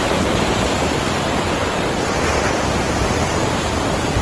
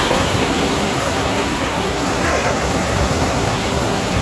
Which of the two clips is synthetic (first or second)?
second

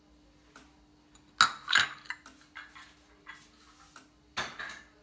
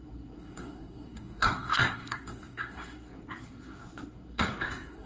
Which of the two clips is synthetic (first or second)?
second